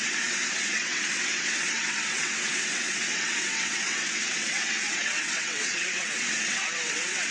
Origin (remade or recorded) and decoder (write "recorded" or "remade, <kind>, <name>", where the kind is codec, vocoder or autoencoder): remade, vocoder, WaveNeXt